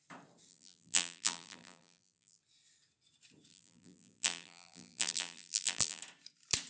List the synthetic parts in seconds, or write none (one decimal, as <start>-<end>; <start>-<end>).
0.5-2.4; 3.5-6.0